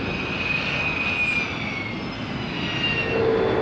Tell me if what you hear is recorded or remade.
recorded